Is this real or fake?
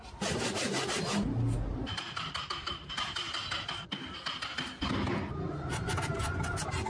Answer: real